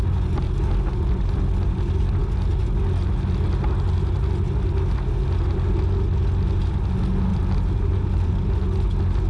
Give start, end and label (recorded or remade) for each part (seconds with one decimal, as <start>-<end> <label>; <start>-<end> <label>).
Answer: 0.0-7.3 recorded; 7.3-8.5 remade; 8.5-9.3 recorded